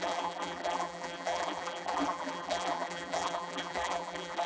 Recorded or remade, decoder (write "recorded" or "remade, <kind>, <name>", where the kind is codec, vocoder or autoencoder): remade, vocoder, BigVGAN v2